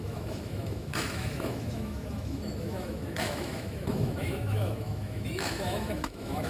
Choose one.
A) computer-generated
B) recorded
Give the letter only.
A